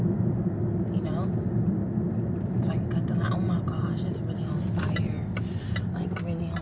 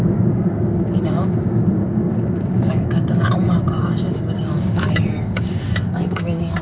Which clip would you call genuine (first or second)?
first